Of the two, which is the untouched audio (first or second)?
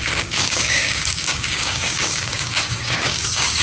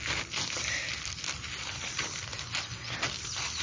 second